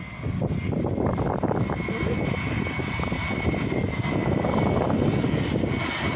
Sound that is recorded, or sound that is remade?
recorded